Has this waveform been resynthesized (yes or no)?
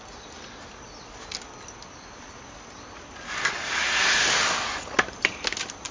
no